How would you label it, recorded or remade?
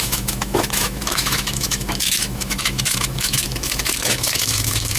remade